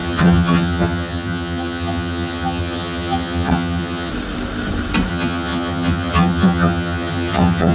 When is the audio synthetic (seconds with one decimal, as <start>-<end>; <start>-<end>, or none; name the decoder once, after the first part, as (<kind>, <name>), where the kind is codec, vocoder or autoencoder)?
0.0-4.1 (vocoder, HiFi-GAN); 5.1-7.7